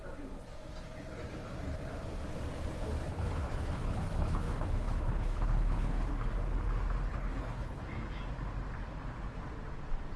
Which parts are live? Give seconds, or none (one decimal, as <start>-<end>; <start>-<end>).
0.0-3.1; 6.1-7.1; 7.8-10.2